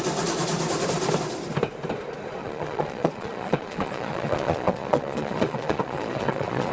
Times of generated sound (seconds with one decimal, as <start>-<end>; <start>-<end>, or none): 2.4-6.7